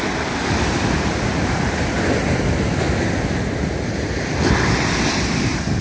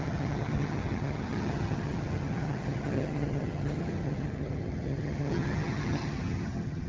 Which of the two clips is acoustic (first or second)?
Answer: first